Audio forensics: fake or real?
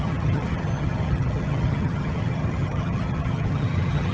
fake